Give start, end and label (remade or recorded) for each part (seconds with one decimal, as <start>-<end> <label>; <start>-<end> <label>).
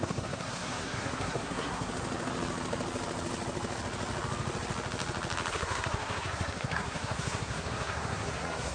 0.0-1.9 remade; 1.9-5.5 recorded; 5.5-8.7 remade